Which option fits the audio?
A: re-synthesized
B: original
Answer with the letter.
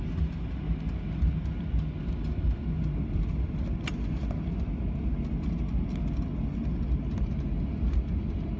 B